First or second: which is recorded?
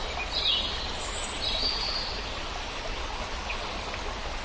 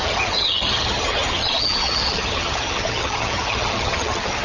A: first